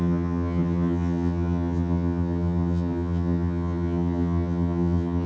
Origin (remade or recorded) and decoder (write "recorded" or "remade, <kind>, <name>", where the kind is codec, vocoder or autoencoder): remade, vocoder, HiFi-GAN